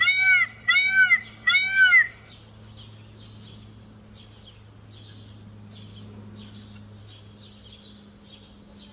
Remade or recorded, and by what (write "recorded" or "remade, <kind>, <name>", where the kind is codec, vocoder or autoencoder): recorded